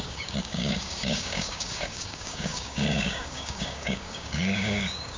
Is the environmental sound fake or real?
fake